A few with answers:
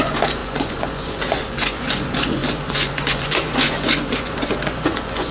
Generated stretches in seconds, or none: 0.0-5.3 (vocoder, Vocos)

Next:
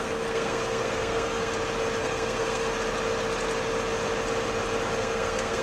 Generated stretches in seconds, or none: 0.0-1.5 (codec, SNAC); 2.0-2.7; 5.0-5.6